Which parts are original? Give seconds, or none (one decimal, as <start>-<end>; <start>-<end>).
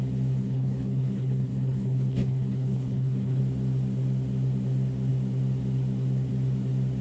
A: 0.0-0.4; 3.4-7.0